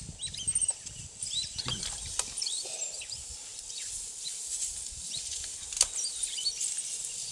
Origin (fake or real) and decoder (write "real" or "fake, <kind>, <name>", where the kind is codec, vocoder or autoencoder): real